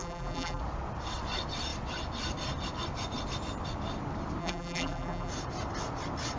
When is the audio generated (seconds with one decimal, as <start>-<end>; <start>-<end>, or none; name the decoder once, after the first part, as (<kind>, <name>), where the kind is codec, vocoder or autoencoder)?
0.0-0.6 (vocoder, BigVGAN v2); 4.4-5.3

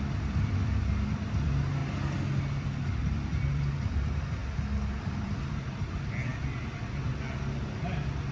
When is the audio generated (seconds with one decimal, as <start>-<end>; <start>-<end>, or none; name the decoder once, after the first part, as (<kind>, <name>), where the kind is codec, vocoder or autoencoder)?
0.0-1.8 (vocoder, BigVGAN v2); 3.0-4.4; 5.0-6.3

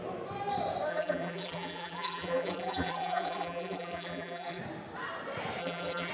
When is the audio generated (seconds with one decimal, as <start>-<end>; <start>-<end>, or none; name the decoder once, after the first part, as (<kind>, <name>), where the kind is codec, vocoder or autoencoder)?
0.9-4.6 (vocoder, BigVGAN v2); 5.6-6.1

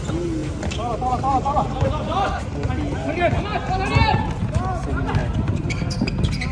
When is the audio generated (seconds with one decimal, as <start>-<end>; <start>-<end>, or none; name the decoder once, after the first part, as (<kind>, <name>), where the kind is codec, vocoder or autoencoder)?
5.2-5.8 (vocoder, BigVGAN v2)

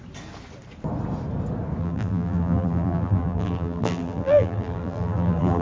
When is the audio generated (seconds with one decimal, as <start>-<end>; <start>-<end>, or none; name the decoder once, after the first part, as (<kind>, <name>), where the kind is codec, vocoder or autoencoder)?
1.8-5.6 (vocoder, BigVGAN v2)

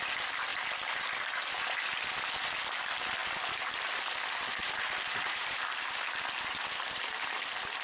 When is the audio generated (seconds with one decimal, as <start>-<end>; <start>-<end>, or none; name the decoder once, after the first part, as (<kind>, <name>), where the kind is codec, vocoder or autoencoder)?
4.6-5.6 (vocoder, BigVGAN v2)